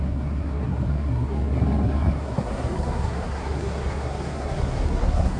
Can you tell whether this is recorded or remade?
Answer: remade